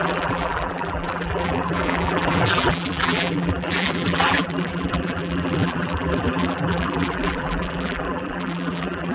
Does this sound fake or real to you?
fake